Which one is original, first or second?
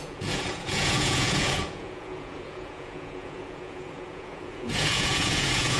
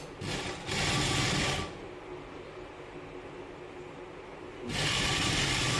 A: second